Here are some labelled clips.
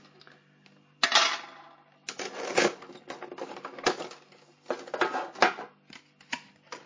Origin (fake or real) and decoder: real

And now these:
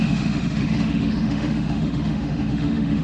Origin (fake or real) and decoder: fake, autoencoder, DAC-VAE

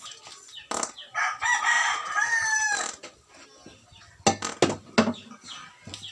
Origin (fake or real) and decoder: real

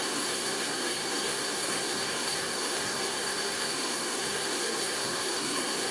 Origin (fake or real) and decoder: fake, codec, SNAC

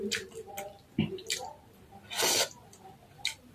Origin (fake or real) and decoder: real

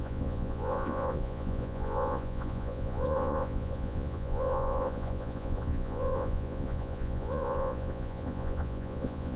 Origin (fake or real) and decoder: fake, vocoder, Vocos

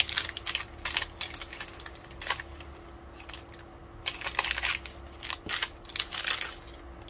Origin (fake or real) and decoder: real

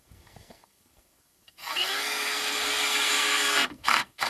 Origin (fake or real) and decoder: fake, codec, SNAC